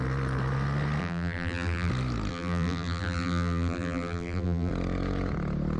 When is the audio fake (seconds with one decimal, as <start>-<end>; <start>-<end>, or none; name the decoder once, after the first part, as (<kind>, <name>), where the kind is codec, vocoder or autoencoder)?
1.0-1.9 (vocoder, BigVGAN v2); 2.3-4.7